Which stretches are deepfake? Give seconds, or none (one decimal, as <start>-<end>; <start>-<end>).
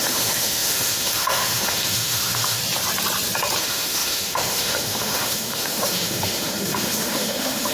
0.0-2.6; 3.6-7.7